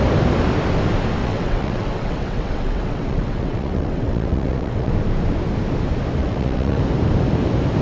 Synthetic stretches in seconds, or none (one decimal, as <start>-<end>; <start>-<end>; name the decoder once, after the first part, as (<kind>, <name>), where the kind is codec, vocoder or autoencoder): 1.2-4.9 (vocoder, WaveNeXt); 6.2-6.8